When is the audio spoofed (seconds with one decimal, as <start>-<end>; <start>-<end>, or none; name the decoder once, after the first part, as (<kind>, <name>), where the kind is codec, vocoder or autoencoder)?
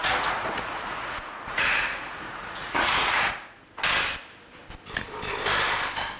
0.0-3.6 (vocoder, Vocos)